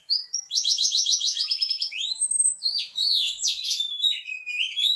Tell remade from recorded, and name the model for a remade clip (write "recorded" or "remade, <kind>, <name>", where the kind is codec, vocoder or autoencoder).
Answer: remade, autoencoder, DAC-VAE